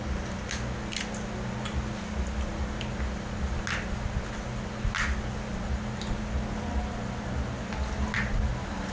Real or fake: real